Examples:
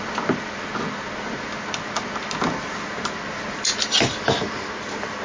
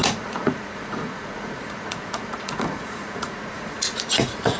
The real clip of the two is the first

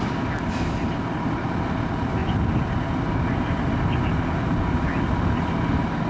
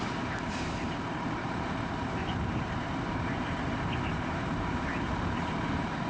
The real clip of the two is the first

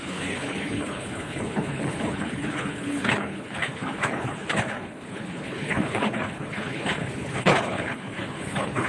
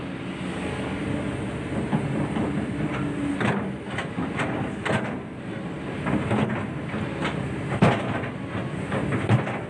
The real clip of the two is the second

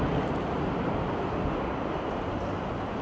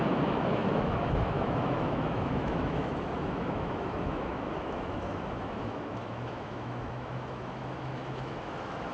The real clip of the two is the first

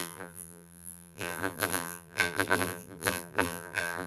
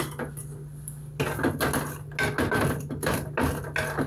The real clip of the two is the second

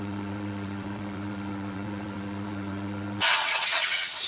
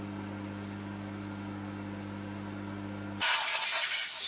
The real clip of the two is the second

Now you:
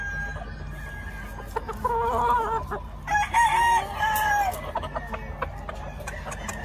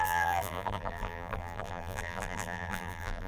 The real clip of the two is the first